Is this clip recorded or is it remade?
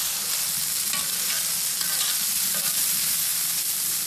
recorded